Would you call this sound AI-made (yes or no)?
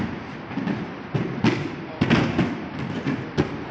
no